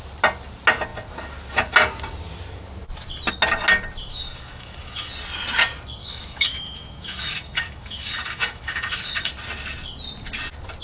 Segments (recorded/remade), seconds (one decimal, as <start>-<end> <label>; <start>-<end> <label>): 0.0-4.1 recorded; 4.1-5.1 remade; 5.1-6.0 recorded; 6.0-9.3 remade; 9.3-10.8 recorded